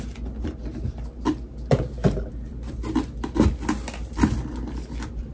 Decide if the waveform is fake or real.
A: real